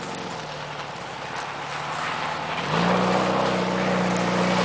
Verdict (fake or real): real